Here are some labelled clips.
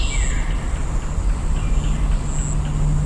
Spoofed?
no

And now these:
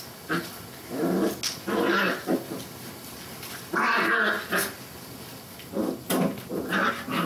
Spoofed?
no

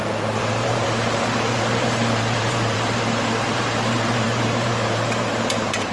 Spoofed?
yes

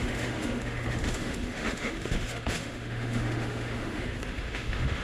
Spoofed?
yes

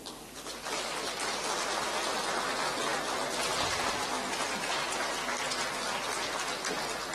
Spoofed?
no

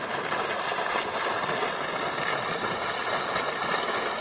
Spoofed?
no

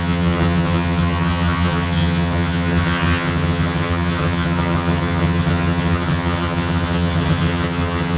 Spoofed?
yes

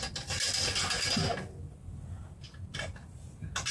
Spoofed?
no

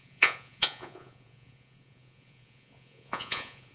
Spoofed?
yes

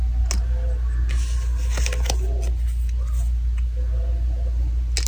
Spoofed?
no